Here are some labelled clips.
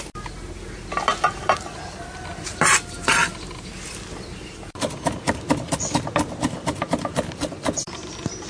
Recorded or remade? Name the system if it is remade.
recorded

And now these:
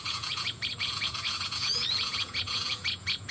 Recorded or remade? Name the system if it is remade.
remade, vocoder, Vocos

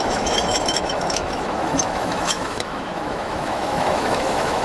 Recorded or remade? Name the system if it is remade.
remade, autoencoder, DAC-VAE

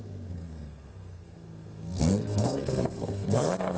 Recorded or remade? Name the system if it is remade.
remade, codec, SNAC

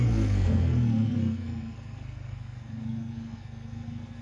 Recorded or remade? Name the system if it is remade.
remade, codec, SNAC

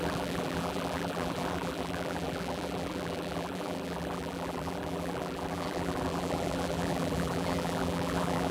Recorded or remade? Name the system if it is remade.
remade, vocoder, BigVGAN v2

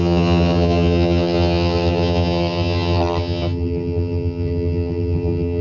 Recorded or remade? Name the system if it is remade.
remade, vocoder, HiFi-GAN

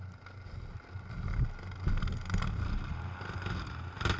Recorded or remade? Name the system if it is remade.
recorded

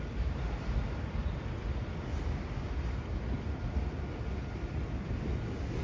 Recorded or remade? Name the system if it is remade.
recorded